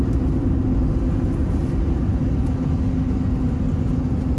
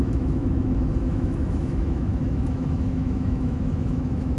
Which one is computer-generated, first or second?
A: second